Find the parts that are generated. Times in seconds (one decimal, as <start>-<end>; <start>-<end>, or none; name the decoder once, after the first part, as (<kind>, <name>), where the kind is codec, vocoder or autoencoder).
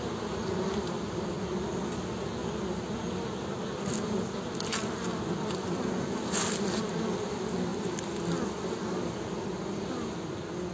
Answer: none